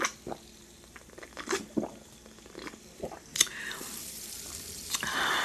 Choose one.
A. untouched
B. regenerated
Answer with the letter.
B